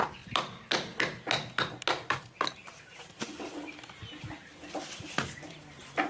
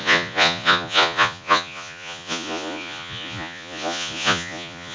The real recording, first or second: first